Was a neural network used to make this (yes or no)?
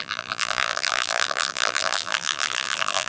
yes